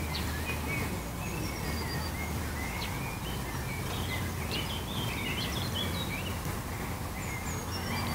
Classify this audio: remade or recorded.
recorded